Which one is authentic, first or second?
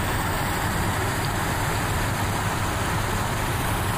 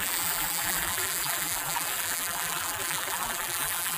first